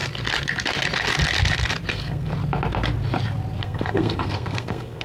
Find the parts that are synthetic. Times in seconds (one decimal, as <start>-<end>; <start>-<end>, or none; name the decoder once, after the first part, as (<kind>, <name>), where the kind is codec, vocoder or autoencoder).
1.9-2.3 (codec, SNAC); 3.6-5.0